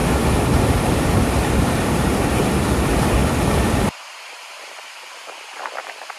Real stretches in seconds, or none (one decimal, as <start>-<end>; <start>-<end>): 0.0-0.9; 3.2-4.3